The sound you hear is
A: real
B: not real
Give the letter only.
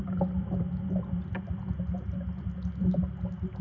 A